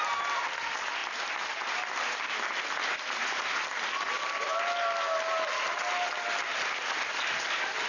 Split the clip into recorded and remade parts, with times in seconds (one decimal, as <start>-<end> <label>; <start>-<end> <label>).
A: 0.0-7.9 recorded